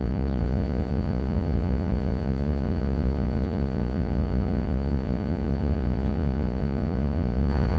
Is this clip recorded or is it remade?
remade